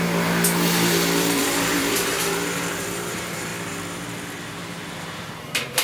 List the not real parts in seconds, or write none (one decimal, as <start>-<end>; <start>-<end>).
0.0-3.5; 4.6-5.8